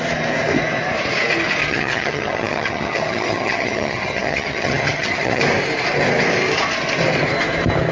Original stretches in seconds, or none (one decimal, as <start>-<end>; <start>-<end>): 0.0-1.6; 5.4-7.9